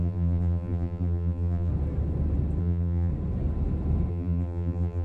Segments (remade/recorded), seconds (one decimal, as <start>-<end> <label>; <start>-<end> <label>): 0.0-1.7 remade; 1.7-2.6 recorded; 2.6-3.1 remade; 3.1-4.1 recorded; 4.1-5.0 remade